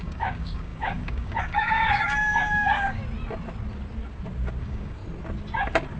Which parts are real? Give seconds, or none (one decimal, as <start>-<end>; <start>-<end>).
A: 3.0-4.6; 5.0-6.0